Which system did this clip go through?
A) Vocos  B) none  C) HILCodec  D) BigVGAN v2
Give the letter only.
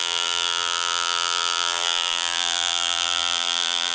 D